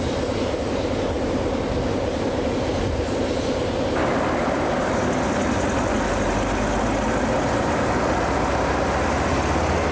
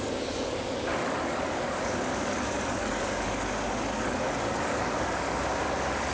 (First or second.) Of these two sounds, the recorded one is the first